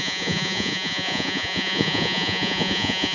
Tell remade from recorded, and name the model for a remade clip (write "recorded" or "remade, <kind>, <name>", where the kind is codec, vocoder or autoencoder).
remade, vocoder, Vocos